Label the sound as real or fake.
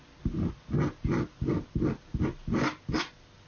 real